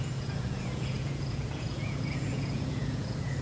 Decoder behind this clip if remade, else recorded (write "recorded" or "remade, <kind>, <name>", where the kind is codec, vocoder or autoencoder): remade, vocoder, Vocos